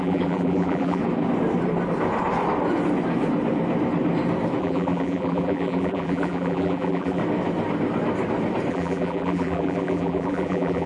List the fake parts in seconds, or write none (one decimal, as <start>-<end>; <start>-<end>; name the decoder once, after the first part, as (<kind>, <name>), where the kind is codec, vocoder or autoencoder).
0.0-1.0 (vocoder, BigVGAN v2); 4.6-7.2; 8.7-10.9